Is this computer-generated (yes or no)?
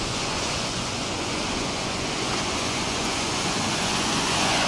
yes